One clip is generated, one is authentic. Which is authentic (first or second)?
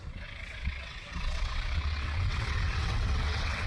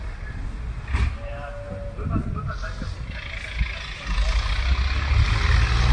second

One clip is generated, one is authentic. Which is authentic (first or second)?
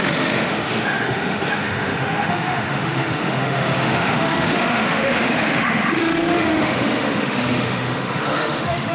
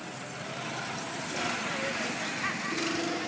second